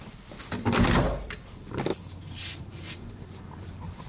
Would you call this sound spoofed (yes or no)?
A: yes